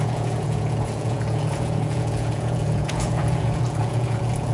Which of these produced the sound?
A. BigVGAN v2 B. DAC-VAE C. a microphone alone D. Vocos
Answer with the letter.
D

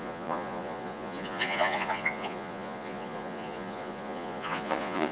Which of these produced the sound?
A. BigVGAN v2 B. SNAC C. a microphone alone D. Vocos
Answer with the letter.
D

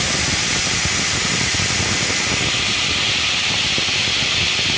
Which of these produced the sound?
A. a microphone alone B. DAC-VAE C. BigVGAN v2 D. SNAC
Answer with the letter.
A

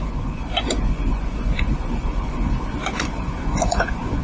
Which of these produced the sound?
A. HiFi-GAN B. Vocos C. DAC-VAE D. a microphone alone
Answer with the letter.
B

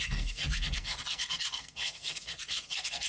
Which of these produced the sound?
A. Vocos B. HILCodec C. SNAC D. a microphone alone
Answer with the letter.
C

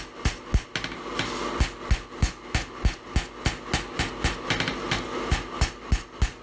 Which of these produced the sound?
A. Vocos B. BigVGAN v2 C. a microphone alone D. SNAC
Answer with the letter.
C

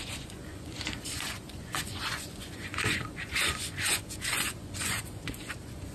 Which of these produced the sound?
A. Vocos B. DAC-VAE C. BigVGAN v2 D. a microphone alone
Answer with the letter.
A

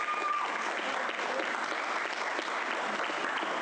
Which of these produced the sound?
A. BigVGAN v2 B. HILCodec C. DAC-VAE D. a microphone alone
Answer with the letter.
D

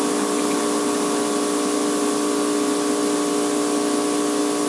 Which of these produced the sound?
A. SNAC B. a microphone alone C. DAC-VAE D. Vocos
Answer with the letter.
B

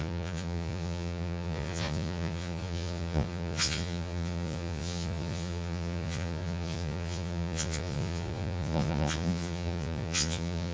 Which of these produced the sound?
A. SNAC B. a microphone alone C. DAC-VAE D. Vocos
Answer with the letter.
D